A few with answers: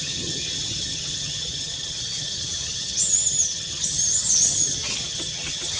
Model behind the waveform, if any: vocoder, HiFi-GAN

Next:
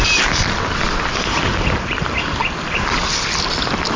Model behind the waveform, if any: none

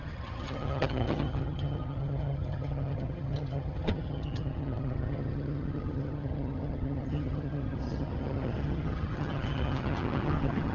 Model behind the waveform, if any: vocoder, HiFi-GAN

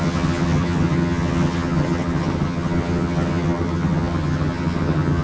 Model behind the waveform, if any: vocoder, HiFi-GAN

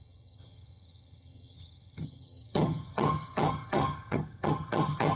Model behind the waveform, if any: vocoder, HiFi-GAN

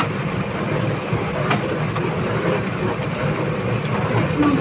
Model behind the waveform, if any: none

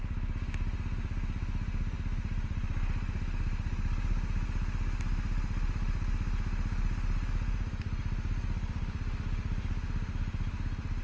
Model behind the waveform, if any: none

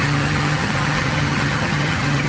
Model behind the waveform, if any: vocoder, HiFi-GAN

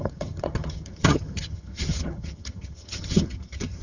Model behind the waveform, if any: vocoder, HiFi-GAN